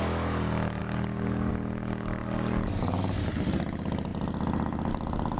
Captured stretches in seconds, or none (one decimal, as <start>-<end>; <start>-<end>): 0.0-0.8; 1.5-2.2; 3.2-5.4